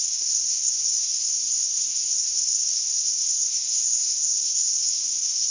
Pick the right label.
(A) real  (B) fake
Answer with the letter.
B